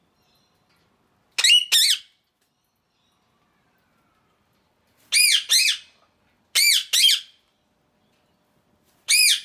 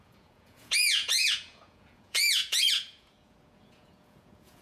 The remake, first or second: second